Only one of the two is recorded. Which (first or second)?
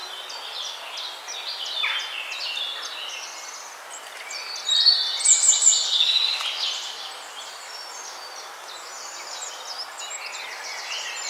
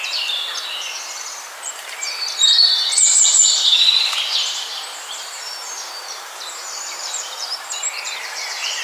first